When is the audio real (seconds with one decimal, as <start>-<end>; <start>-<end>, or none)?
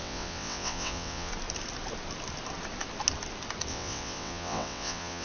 1.3-3.7